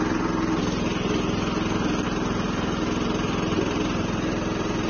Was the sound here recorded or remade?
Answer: recorded